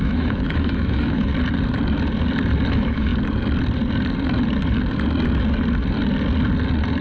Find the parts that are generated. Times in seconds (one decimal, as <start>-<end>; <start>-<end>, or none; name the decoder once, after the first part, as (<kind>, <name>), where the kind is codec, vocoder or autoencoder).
0.0-1.3 (autoencoder, DAC-VAE); 2.7-3.1